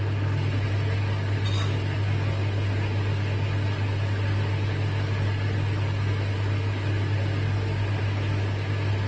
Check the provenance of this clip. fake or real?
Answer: real